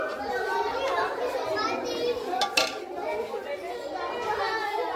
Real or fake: real